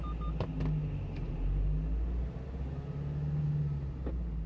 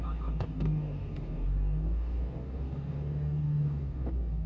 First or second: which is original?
first